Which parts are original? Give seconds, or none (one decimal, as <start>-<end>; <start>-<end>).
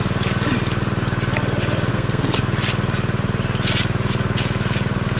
0.0-1.9; 2.4-5.2